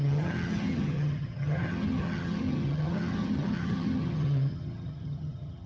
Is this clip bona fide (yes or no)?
no